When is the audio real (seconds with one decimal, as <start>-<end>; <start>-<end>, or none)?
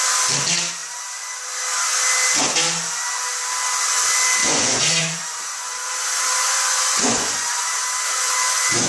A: 0.0-4.4